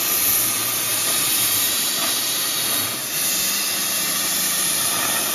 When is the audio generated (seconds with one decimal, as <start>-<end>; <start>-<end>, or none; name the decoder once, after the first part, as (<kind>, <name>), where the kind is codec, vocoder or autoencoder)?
0.9-3.1 (vocoder, BigVGAN v2); 3.8-4.7